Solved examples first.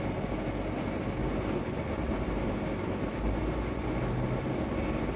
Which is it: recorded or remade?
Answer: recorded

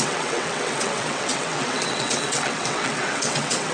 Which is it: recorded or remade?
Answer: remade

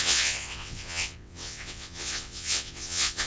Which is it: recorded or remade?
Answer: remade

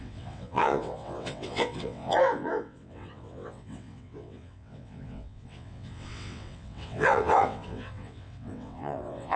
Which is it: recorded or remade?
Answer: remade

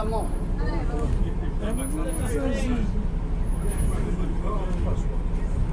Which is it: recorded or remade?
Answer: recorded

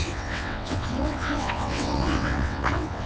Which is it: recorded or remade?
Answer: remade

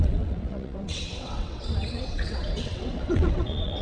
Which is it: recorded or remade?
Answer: remade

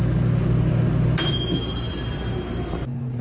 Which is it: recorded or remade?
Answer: recorded